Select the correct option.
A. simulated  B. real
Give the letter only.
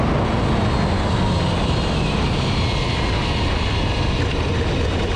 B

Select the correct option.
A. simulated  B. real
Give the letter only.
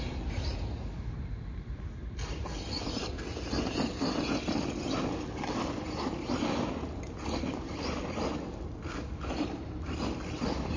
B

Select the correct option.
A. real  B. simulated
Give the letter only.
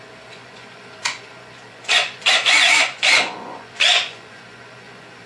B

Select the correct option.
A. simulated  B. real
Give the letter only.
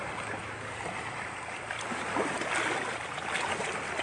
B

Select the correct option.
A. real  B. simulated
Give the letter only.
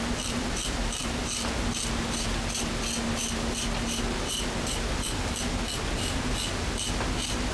A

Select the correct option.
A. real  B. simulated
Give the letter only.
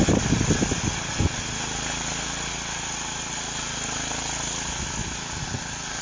A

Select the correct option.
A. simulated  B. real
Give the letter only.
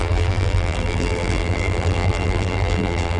A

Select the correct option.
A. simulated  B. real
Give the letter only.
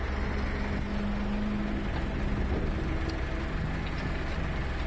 B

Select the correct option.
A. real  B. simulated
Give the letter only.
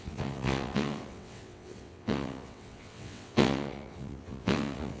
B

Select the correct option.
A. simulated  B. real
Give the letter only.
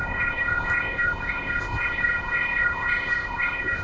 A